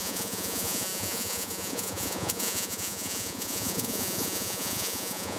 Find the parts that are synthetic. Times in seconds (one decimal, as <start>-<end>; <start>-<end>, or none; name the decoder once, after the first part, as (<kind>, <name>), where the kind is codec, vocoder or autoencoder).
0.0-5.4 (vocoder, Vocos)